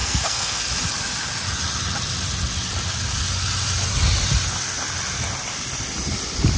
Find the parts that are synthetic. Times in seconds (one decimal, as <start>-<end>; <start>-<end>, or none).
0.0-0.6